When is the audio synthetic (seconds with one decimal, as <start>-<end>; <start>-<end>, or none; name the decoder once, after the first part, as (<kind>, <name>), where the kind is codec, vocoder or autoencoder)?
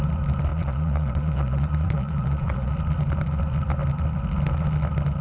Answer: 0.5-2.7 (vocoder, Vocos)